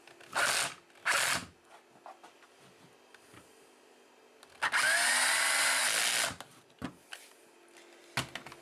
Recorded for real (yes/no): yes